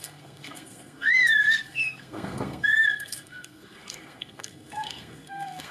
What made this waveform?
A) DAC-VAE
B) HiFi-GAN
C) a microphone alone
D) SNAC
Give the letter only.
D